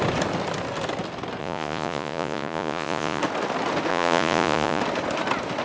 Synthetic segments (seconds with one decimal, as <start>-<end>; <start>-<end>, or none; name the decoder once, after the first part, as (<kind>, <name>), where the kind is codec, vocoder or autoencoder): 1.4-3.2 (vocoder, Vocos); 3.9-4.8